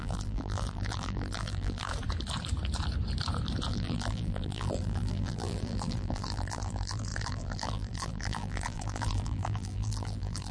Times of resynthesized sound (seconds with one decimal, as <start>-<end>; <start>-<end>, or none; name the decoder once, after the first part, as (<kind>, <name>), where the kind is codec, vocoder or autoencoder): 0.0-1.9 (vocoder, BigVGAN v2); 3.7-10.5